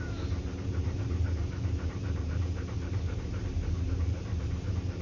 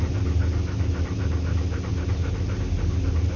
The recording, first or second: second